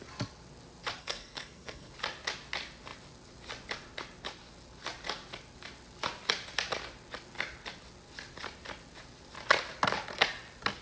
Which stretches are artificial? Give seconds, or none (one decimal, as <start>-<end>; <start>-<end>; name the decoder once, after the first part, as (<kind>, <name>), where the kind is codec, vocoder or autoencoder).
1.0-1.9 (codec, SNAC)